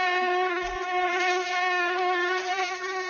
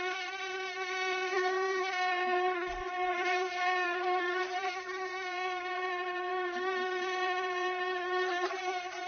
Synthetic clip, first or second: second